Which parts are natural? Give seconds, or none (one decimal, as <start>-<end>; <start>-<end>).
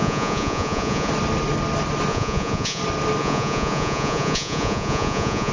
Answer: 1.1-2.1; 2.8-3.2